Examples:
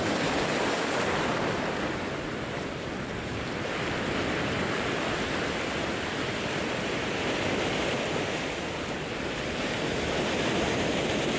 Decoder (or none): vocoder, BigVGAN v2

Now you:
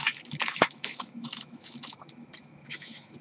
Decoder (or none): autoencoder, DAC-VAE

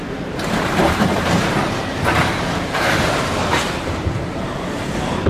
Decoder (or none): vocoder, BigVGAN v2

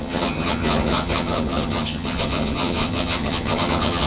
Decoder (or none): vocoder, HiFi-GAN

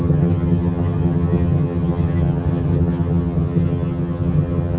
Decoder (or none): vocoder, HiFi-GAN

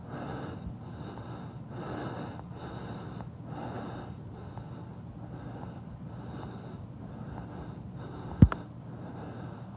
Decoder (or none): none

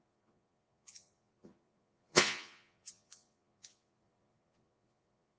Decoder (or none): vocoder, Vocos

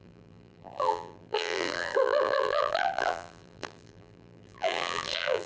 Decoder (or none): vocoder, BigVGAN v2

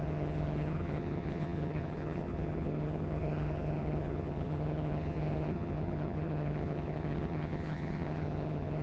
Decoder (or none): vocoder, HiFi-GAN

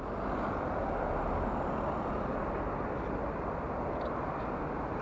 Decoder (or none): none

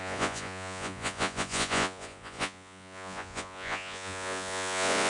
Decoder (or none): vocoder, Vocos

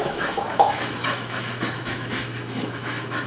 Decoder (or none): autoencoder, DAC-VAE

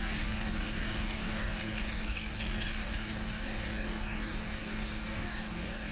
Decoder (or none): codec, DAC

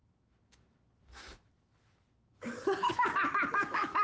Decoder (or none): autoencoder, DAC-VAE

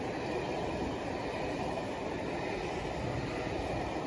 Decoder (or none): none